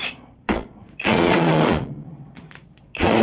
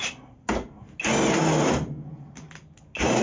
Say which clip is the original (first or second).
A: second